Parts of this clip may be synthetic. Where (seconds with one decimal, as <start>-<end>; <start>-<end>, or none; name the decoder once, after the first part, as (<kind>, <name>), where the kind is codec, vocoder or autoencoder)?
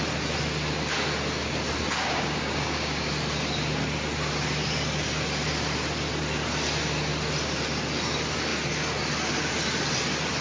2.0-3.1 (codec, DAC)